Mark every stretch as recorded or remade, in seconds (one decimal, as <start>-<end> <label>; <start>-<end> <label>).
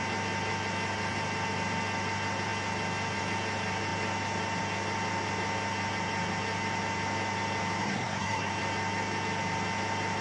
0.0-7.8 recorded; 7.8-8.5 remade; 8.5-10.2 recorded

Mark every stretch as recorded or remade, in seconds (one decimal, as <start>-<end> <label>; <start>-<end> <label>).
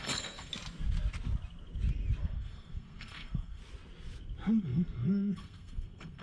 0.0-0.5 remade; 0.5-2.2 recorded; 2.2-3.6 remade; 3.6-4.6 recorded; 4.6-6.2 remade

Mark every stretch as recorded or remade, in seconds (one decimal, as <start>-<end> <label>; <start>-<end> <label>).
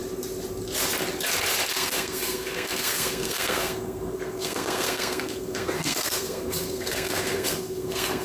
0.0-1.7 recorded; 1.7-8.2 remade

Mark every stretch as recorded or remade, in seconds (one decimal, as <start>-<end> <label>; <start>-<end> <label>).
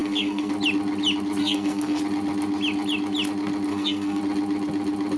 0.0-0.5 remade; 0.5-1.4 recorded; 1.4-2.0 remade; 2.0-3.7 recorded; 3.7-4.2 remade; 4.2-5.2 recorded